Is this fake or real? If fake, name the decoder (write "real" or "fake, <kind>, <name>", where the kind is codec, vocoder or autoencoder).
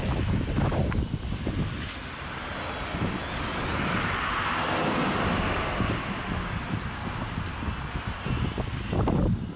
real